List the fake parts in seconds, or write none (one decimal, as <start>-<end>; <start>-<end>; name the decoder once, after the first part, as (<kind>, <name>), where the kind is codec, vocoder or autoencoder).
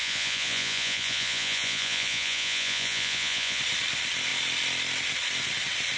0.0-3.6 (vocoder, Vocos)